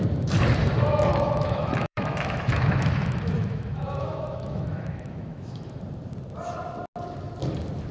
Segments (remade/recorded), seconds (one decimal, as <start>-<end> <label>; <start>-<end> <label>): 0.0-1.1 recorded; 1.1-5.8 remade; 5.8-7.9 recorded